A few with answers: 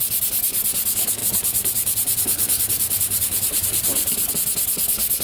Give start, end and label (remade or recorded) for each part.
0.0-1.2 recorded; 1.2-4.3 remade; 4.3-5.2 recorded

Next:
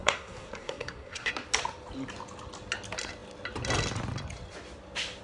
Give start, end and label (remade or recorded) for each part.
0.0-1.3 remade; 1.3-5.2 recorded

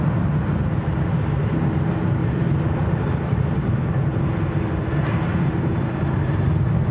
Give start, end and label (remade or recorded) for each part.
0.0-2.2 recorded; 2.2-4.2 remade; 4.2-4.9 recorded; 4.9-6.5 remade; 6.5-6.9 recorded

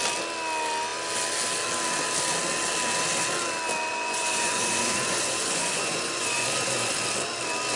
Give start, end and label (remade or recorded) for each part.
0.0-3.9 recorded; 3.9-6.9 remade; 6.9-7.8 recorded

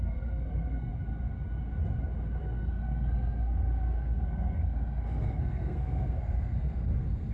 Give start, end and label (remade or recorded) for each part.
0.0-0.9 remade; 0.9-2.4 recorded; 2.4-7.3 remade

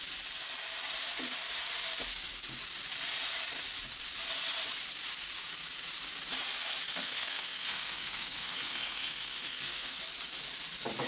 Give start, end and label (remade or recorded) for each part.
0.0-6.9 recorded; 6.9-10.0 remade; 10.0-11.1 recorded

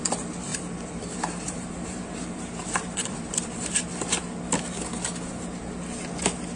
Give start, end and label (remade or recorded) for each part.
0.0-0.5 recorded; 0.5-3.6 remade; 3.6-6.6 recorded